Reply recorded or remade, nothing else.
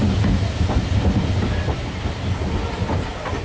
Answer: recorded